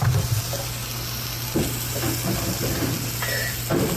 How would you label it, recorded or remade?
recorded